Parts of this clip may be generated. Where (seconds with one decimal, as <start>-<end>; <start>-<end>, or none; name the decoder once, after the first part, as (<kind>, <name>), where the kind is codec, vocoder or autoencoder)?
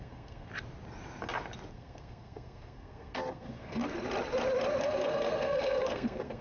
0.0-0.5 (codec, SNAC); 1.7-3.8; 4.8-6.4